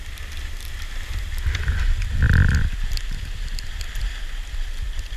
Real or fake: real